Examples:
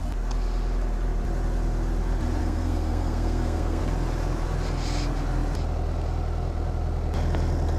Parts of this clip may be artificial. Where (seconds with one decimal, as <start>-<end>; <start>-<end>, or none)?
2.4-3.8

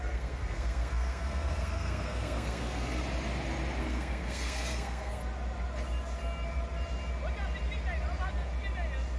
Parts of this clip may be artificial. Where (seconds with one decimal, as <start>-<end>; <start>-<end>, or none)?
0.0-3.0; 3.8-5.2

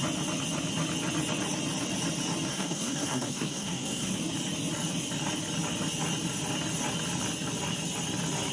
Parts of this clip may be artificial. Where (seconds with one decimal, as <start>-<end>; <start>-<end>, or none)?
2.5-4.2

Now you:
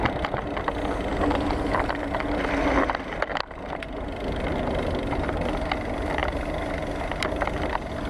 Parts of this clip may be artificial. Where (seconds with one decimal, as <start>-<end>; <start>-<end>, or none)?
none

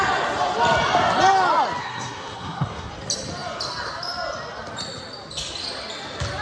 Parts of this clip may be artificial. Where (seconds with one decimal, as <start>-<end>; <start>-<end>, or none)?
1.8-2.9

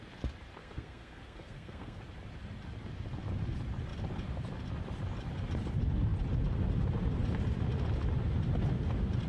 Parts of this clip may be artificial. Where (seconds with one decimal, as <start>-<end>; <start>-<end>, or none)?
0.6-2.0